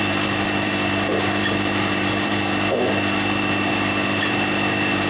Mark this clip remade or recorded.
remade